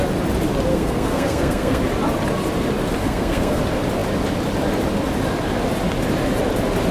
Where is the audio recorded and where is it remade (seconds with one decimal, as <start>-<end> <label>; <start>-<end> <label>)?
0.0-0.7 recorded; 0.7-1.8 remade; 1.8-3.0 recorded; 3.0-3.6 remade; 3.6-6.9 recorded